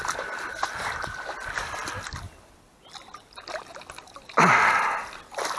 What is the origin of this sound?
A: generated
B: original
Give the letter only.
B